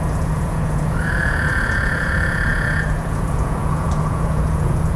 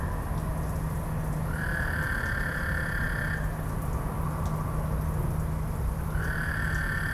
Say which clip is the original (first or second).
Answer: second